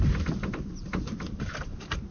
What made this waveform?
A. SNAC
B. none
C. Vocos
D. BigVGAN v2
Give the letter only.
B